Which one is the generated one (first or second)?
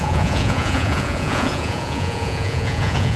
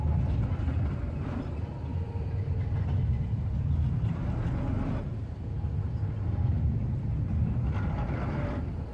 first